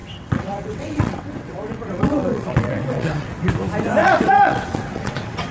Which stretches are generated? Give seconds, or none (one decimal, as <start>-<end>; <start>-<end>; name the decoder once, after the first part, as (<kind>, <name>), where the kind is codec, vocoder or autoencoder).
0.0-3.3 (vocoder, WaveNeXt); 4.0-5.5